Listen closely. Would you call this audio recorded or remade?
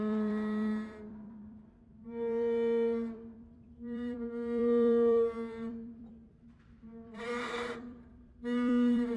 remade